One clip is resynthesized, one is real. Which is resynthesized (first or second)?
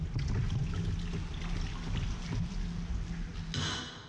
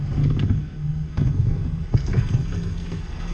second